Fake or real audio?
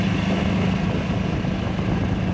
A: real